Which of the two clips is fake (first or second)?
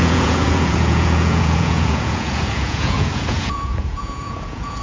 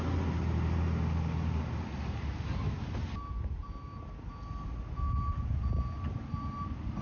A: first